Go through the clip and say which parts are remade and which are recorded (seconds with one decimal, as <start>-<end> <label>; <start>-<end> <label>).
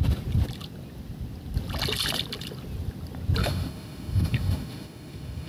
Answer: 0.0-3.4 recorded; 3.4-5.5 remade